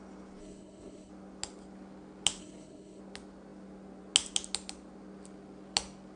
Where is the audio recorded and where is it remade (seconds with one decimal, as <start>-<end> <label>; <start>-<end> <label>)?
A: 0.0-0.4 recorded; 0.4-1.1 remade; 1.1-2.4 recorded; 2.4-3.0 remade; 3.0-6.2 recorded